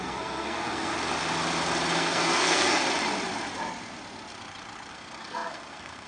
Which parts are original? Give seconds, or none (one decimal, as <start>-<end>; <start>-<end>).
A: 0.9-1.9; 2.8-4.9